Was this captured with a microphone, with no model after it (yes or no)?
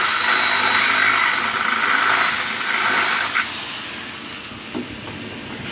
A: yes